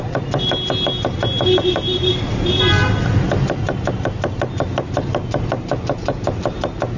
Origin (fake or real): real